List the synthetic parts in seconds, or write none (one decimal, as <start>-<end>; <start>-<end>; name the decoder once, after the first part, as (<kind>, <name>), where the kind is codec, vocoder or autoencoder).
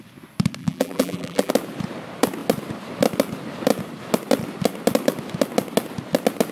0.6-1.5 (vocoder, BigVGAN v2)